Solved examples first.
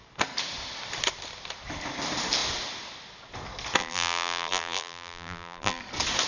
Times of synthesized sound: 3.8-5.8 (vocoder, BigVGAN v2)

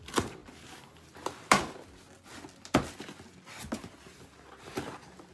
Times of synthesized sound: none

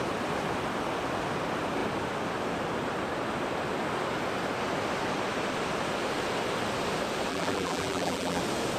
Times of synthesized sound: 7.3-8.4 (vocoder, BigVGAN v2)

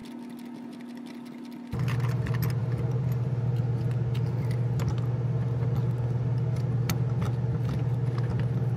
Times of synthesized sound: 2.6-3.6 (vocoder, BigVGAN v2)

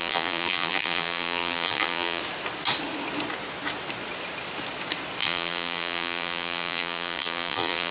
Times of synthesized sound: 0.0-2.2 (vocoder, BigVGAN v2); 5.2-7.9